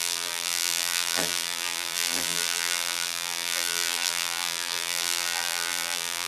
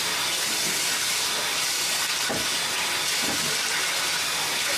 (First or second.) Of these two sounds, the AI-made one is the first